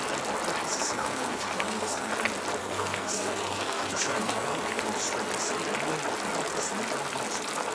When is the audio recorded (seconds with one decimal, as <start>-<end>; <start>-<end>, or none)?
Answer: 0.0-0.8; 2.1-2.6; 4.8-7.7